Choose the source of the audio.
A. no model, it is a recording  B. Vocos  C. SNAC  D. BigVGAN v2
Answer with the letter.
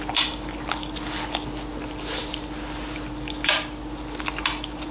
A